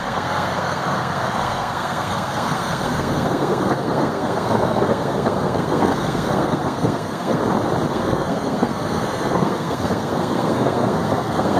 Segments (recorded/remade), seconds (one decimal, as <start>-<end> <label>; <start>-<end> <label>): 0.0-7.4 remade; 7.4-7.9 recorded; 7.9-11.6 remade